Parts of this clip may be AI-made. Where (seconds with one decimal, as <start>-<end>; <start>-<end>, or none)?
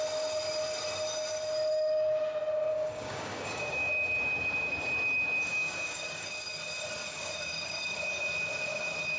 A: 2.7-3.9; 5.5-6.3; 7.1-7.8